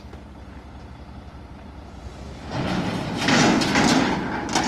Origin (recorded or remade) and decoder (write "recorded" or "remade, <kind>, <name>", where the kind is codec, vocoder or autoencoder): recorded